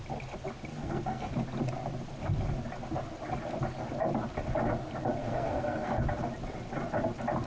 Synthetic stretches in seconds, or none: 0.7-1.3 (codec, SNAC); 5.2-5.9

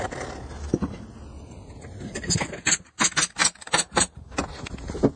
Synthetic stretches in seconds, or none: 3.4-4.4 (vocoder, BigVGAN v2)

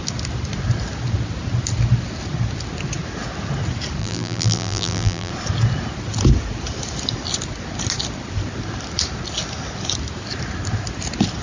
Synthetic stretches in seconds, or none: 4.0-5.3 (vocoder, BigVGAN v2)

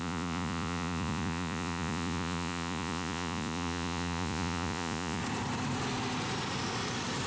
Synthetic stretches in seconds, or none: 0.0-5.2 (vocoder, Vocos)